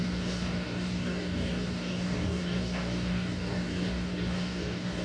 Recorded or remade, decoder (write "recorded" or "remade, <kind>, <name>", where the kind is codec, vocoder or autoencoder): remade, codec, DAC